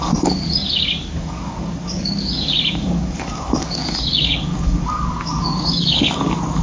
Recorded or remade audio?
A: remade